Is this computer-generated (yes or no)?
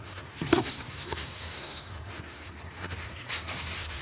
yes